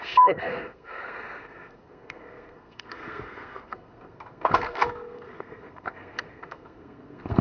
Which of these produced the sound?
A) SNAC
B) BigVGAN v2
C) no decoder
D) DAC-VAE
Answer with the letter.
A